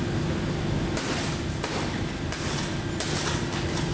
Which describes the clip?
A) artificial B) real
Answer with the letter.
B